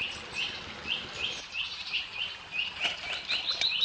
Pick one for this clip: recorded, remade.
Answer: recorded